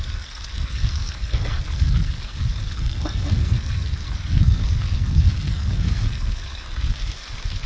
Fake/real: fake